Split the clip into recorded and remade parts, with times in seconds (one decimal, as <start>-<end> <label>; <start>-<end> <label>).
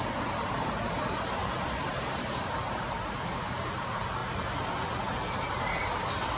0.0-4.2 remade; 4.2-5.8 recorded; 5.8-6.4 remade